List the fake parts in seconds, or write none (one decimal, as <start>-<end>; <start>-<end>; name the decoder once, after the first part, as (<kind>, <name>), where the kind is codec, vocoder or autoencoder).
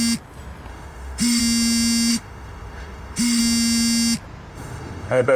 0.7-1.4 (autoencoder, DAC-VAE); 2.1-3.4; 4.5-5.4